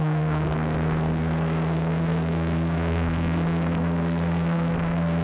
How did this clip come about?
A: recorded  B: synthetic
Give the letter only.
B